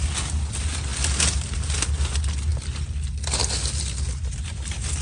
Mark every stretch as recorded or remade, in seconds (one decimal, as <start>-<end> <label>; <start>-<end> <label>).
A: 0.0-5.0 recorded